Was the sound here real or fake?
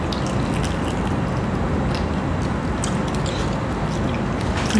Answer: real